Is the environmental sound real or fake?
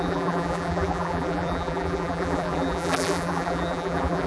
fake